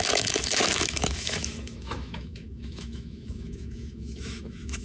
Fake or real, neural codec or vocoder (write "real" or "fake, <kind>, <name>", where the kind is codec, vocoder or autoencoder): fake, autoencoder, DAC-VAE